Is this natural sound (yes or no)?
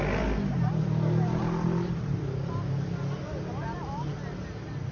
yes